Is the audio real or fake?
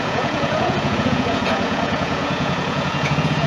fake